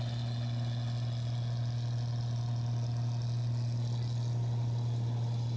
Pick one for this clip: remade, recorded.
recorded